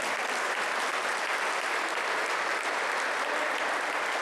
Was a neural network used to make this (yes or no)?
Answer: no